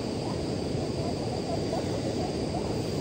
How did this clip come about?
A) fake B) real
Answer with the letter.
B